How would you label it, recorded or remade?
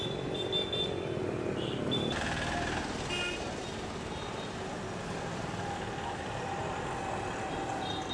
recorded